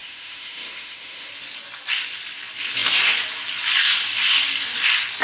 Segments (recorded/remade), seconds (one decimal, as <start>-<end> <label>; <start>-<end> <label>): 0.0-1.3 remade; 1.3-5.2 recorded